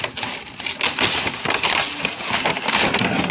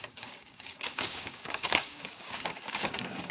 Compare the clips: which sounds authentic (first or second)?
first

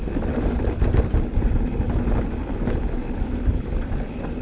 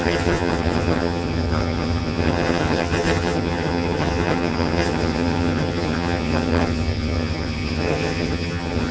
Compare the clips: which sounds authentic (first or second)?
first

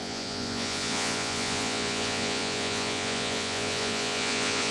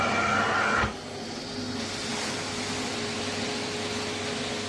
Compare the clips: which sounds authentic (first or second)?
second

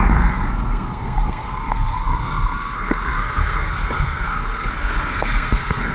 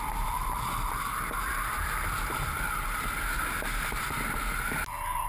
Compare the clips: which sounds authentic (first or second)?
second